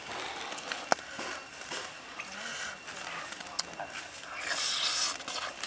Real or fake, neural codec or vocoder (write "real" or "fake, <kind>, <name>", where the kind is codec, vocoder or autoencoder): real